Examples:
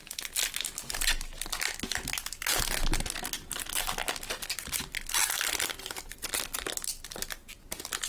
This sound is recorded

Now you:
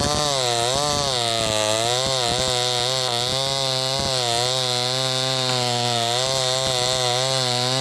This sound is recorded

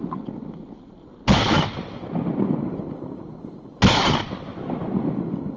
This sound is recorded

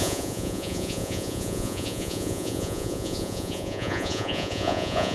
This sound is remade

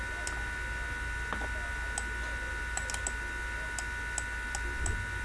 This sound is recorded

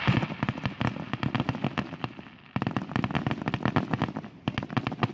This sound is recorded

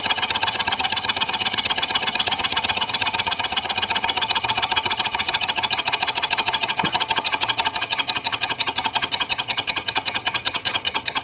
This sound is remade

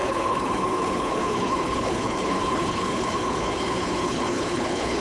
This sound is remade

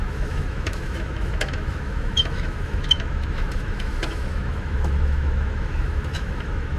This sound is remade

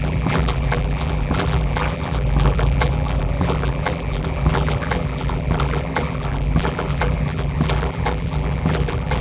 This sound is remade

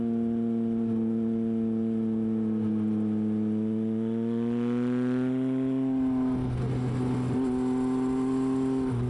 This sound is recorded